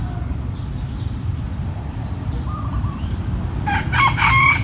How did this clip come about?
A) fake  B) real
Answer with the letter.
A